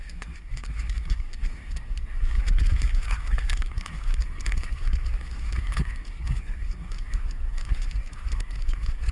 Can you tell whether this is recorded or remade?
remade